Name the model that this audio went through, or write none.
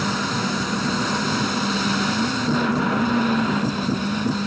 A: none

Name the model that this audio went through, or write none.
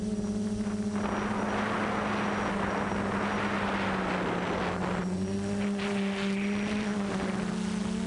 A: none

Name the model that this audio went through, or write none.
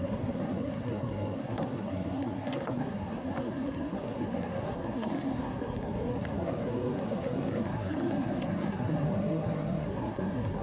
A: codec, SNAC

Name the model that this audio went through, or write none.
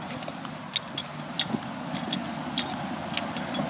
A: none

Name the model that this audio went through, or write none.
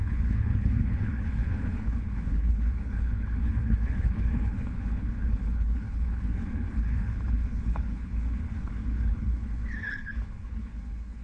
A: codec, HILCodec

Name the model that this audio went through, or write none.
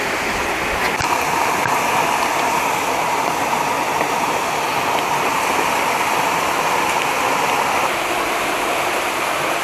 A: none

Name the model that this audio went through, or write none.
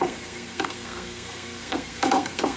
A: codec, SNAC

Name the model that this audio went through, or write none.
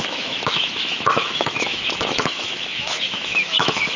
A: autoencoder, DAC-VAE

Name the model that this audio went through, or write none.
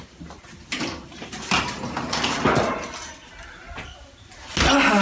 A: none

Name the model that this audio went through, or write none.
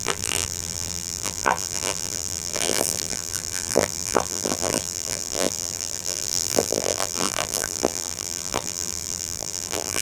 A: vocoder, BigVGAN v2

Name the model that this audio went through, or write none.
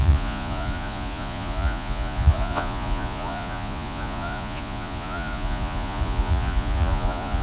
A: vocoder, Vocos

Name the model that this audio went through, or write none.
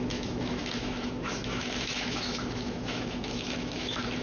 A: autoencoder, DAC-VAE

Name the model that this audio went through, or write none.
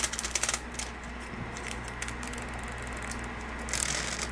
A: none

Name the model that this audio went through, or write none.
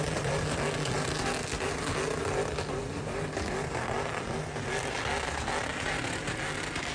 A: none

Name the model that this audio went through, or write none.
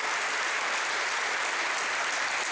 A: none